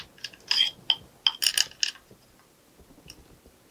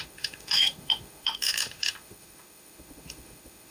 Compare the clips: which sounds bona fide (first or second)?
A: first